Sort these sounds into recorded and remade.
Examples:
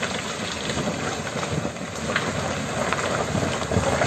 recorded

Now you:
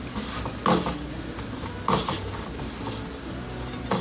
recorded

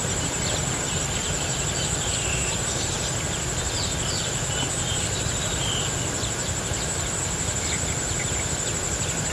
recorded